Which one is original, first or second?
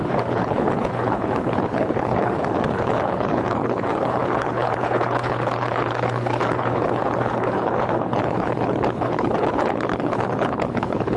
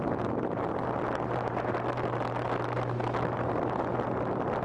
second